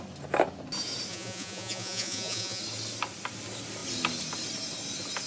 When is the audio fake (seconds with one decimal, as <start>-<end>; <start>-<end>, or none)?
1.1-2.6